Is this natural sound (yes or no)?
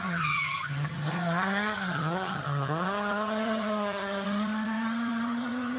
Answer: no